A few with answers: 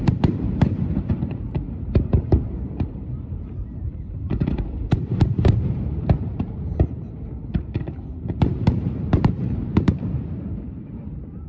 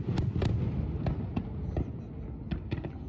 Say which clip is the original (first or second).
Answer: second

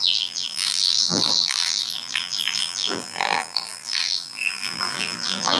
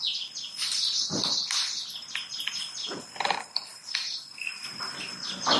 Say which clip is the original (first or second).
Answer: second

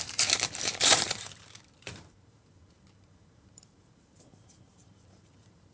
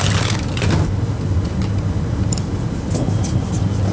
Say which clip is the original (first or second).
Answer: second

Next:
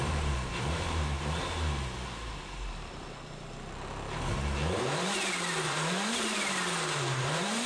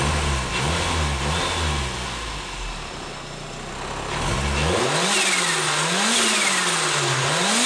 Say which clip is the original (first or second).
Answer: second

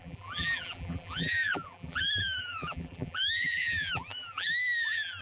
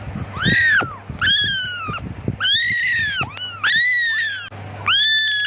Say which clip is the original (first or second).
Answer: second